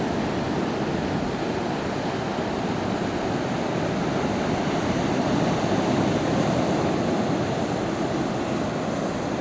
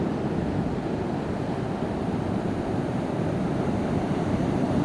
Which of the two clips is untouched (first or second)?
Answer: first